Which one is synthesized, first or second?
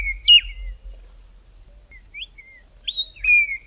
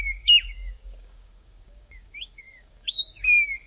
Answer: second